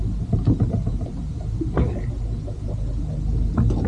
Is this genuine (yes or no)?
yes